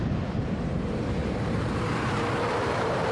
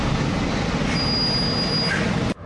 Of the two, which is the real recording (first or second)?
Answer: second